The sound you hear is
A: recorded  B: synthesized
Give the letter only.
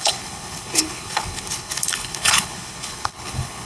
B